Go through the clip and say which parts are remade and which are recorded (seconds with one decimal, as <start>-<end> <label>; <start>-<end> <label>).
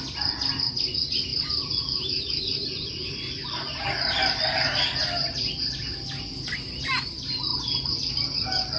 0.0-8.8 recorded